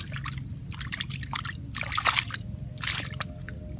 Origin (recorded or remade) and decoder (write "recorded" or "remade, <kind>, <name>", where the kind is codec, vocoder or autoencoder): recorded